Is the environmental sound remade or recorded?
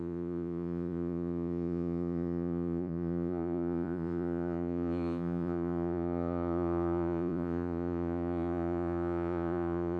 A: remade